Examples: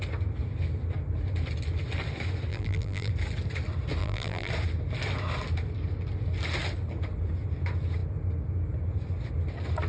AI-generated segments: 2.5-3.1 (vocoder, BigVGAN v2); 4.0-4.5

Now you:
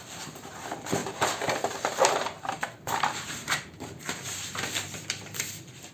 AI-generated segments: 1.0-4.0 (vocoder, BigVGAN v2)